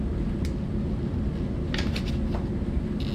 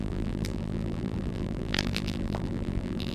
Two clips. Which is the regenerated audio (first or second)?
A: second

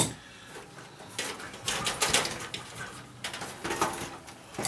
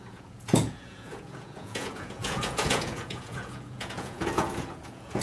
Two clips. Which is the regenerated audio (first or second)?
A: second